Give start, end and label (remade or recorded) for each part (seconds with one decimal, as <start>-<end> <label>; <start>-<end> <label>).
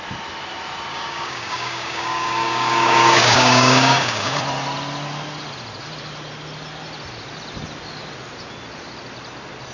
0.0-0.9 recorded; 0.9-4.4 remade; 4.4-9.7 recorded